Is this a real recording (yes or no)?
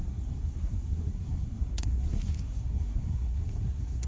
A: no